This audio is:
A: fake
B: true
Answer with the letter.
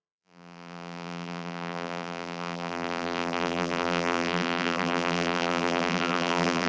A